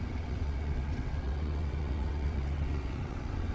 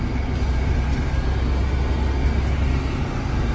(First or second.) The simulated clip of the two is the first